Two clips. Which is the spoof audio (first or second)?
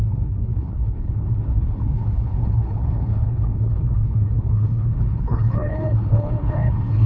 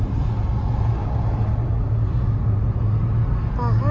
first